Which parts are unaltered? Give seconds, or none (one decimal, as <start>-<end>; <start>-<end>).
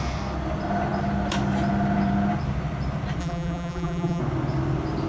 0.0-3.2; 4.2-5.1